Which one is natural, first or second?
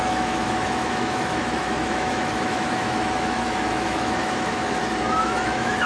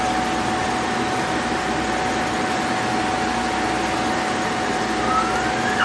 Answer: second